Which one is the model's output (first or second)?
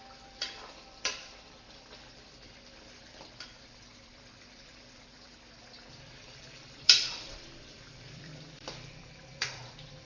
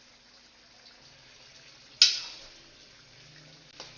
first